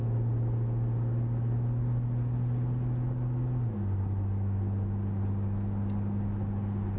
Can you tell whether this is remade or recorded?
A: recorded